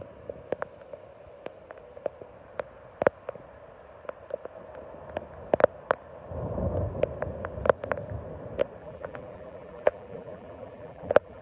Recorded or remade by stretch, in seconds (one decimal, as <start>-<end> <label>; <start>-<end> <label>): 0.0-8.8 recorded; 8.8-11.4 remade

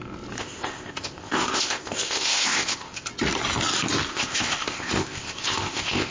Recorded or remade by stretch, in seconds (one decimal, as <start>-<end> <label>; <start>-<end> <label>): 0.0-0.4 recorded; 0.4-3.1 remade; 3.1-4.1 recorded; 4.1-6.1 remade

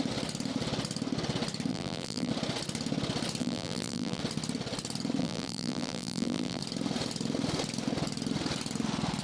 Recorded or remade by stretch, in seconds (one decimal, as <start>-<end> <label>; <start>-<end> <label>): 0.0-1.7 recorded; 1.7-2.3 remade; 2.3-3.4 recorded; 3.4-4.2 remade; 4.2-5.2 recorded; 5.2-6.6 remade; 6.6-9.2 recorded